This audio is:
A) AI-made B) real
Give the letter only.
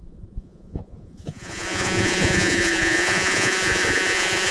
A